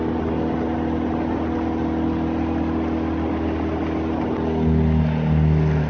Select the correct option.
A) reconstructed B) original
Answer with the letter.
B